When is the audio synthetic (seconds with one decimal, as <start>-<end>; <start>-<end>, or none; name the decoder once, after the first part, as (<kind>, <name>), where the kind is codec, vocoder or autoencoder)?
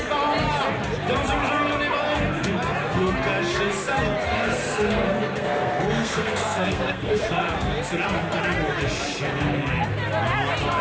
4.2-7.4 (codec, SNAC)